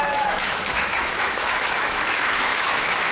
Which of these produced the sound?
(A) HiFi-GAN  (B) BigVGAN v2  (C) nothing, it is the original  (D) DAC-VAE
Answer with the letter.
D